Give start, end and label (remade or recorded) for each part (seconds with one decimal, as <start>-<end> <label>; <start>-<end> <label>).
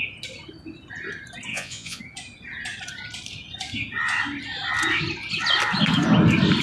0.0-1.5 recorded; 1.5-2.0 remade; 2.0-6.6 recorded